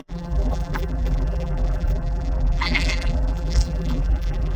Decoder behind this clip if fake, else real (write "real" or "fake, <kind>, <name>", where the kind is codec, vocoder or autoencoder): fake, vocoder, BigVGAN v2